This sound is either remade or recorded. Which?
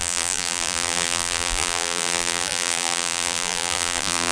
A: remade